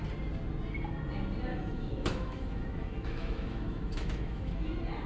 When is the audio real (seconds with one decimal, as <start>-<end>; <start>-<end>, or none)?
0.0-1.5; 4.6-5.1